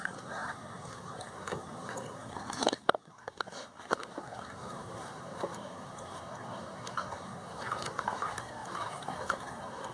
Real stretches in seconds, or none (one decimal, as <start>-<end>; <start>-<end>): none